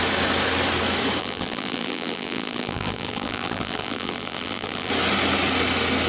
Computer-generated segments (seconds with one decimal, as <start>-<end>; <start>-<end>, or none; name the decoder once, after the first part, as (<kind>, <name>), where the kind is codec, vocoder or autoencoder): 1.2-4.9 (vocoder, BigVGAN v2)